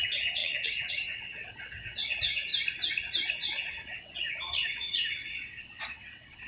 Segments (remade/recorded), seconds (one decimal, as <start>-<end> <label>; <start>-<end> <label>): 0.0-2.5 remade; 2.5-3.3 recorded; 3.3-6.5 remade